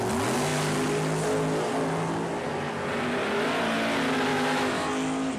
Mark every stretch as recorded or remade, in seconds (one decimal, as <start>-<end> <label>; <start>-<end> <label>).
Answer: 0.0-4.3 recorded; 4.3-4.9 remade; 4.9-5.4 recorded